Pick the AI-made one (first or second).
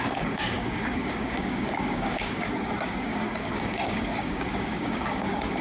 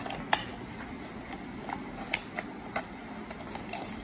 first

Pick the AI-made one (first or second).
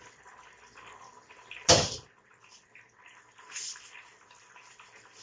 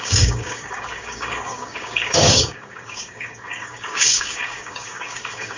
second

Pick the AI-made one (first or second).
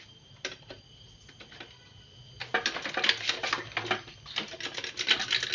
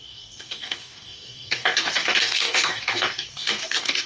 second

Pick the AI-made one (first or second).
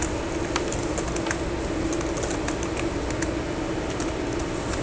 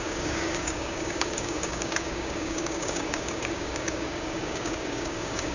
second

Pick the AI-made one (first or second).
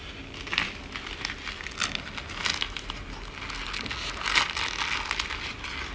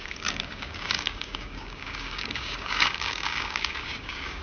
second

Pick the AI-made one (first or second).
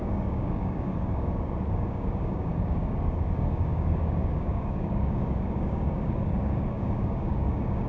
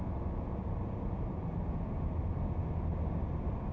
first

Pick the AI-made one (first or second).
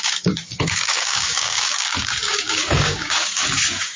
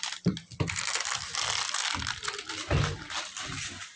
first